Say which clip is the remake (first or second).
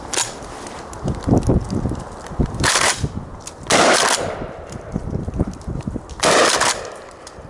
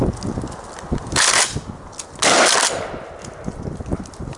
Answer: first